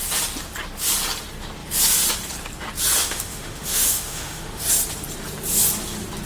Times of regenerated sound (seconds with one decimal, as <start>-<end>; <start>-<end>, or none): 3.0-4.6